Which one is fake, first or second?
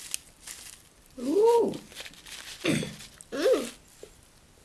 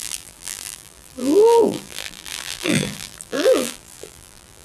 second